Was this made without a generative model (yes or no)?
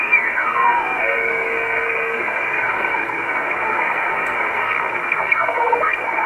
no